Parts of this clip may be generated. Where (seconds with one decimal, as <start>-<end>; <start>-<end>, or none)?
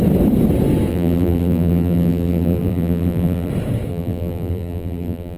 0.9-3.5; 3.9-5.4